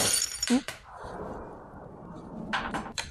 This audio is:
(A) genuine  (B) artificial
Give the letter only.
B